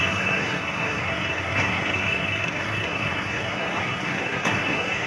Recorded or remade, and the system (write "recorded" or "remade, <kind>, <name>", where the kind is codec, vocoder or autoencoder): remade, codec, SNAC